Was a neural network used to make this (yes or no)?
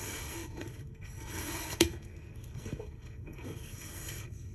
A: yes